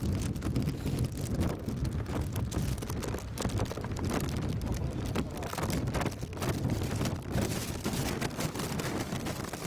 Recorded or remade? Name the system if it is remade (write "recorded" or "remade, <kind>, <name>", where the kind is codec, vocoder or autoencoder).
recorded